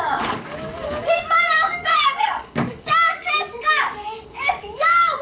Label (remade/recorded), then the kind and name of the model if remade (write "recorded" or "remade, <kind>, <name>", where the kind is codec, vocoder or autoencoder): remade, codec, DAC